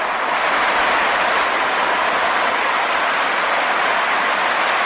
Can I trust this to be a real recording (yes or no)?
yes